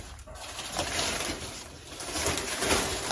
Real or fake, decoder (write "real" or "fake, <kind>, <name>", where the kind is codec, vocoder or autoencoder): real